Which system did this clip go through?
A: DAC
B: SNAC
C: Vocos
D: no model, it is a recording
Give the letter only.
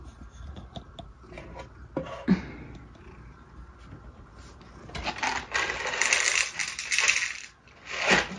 D